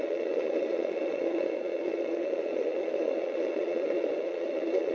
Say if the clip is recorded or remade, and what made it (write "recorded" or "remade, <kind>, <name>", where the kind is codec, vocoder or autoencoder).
remade, vocoder, Vocos